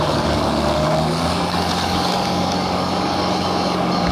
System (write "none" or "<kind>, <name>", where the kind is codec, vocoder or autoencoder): codec, DAC